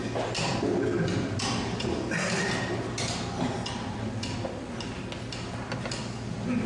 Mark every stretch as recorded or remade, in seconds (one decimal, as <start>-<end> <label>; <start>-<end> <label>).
0.0-6.7 recorded